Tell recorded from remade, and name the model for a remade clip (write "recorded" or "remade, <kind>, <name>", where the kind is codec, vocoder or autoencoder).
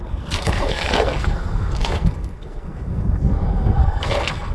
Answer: remade, codec, SNAC